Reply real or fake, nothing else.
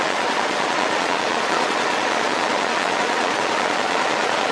fake